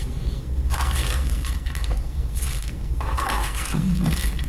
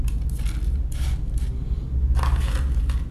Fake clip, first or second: first